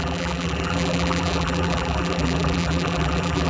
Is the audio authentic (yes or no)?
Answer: no